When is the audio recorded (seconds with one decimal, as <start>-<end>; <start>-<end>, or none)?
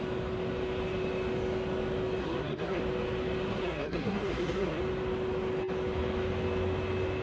0.0-2.2; 2.8-3.5; 4.8-7.2